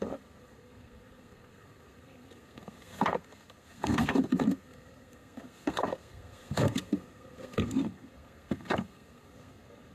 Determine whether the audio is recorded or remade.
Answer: remade